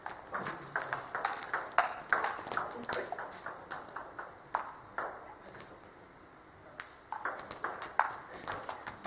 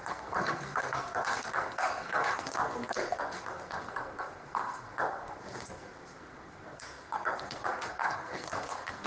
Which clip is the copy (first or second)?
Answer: second